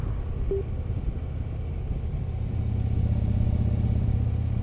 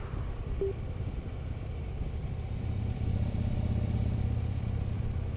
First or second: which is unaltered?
first